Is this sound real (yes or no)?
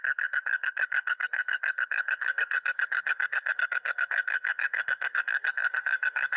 no